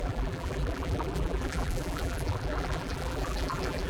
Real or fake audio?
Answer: fake